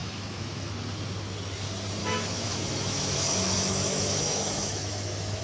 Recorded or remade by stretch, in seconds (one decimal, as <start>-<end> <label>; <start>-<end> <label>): 0.0-0.7 remade; 0.7-2.0 recorded; 2.0-5.4 remade

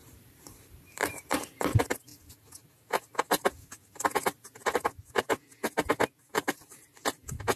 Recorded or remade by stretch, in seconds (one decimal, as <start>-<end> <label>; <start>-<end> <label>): 0.0-2.1 remade; 2.1-6.3 recorded; 6.3-7.0 remade; 7.0-7.6 recorded

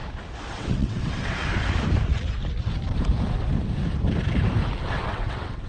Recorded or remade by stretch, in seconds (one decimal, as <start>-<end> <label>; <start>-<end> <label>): 0.0-0.5 recorded; 0.5-1.5 remade; 1.5-4.9 recorded; 4.9-5.7 remade

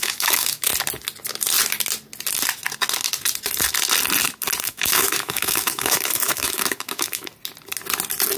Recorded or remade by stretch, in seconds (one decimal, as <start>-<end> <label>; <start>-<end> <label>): 0.0-0.7 remade; 0.7-4.6 recorded; 4.6-7.3 remade; 7.3-8.4 recorded